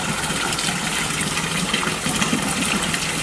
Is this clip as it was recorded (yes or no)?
yes